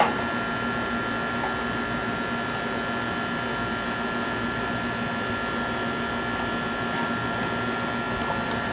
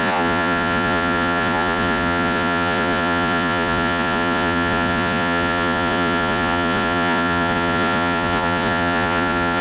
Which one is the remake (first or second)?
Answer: second